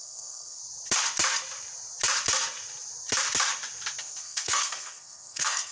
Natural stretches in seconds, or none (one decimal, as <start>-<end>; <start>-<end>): 0.6-4.0